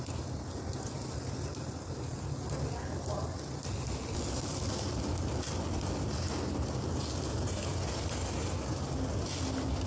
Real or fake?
real